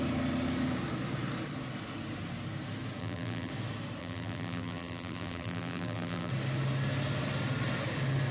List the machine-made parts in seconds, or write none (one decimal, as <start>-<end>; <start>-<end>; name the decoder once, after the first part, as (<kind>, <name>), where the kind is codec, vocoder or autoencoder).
3.0-3.5 (vocoder, BigVGAN v2); 4.0-6.3